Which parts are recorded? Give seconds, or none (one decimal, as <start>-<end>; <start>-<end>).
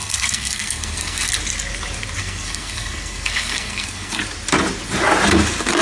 1.3-2.2; 4.2-5.8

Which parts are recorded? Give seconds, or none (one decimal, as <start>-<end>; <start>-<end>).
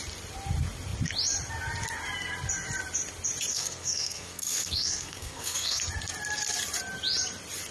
0.0-3.5; 5.8-7.7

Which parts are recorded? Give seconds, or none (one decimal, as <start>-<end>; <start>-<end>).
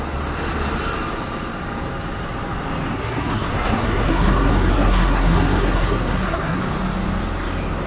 0.0-2.9; 6.6-7.9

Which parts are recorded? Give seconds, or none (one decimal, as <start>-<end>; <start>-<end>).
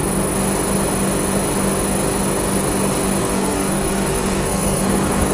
0.0-3.2